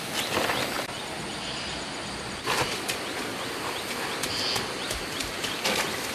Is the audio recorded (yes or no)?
yes